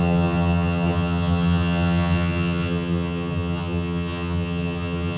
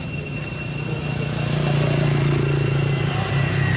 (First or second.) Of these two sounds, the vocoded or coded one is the first